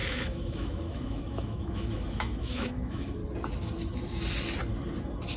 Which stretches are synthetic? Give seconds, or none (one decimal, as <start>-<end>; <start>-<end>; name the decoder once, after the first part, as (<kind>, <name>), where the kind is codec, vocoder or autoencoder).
0.0-3.2 (autoencoder, DAC-VAE)